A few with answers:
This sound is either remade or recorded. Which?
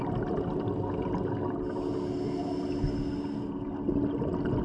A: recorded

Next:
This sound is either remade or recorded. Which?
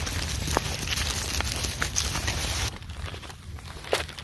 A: recorded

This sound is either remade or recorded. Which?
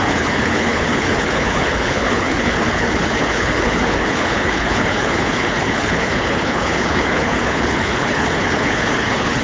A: remade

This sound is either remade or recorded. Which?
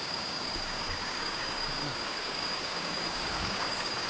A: remade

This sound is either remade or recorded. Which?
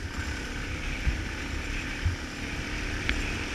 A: recorded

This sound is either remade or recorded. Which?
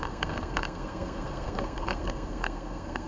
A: remade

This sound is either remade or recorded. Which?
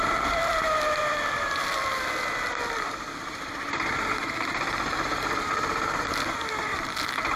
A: remade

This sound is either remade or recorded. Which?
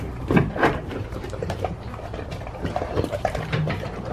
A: remade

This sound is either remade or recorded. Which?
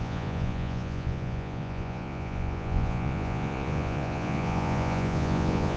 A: remade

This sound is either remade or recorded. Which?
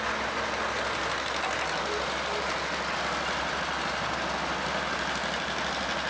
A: recorded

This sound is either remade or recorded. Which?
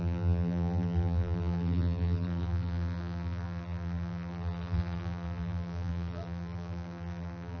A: remade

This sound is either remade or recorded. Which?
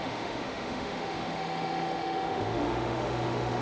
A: remade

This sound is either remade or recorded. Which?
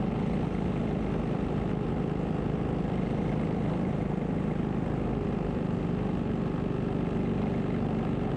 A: recorded